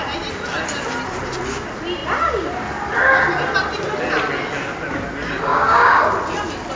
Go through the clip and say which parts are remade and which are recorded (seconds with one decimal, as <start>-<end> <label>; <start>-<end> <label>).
0.0-5.5 recorded; 5.5-6.0 remade; 6.0-6.8 recorded